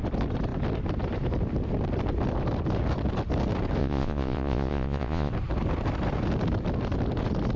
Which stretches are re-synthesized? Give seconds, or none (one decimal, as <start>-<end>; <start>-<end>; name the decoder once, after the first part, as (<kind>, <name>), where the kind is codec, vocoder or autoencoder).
3.8-5.3 (vocoder, Vocos)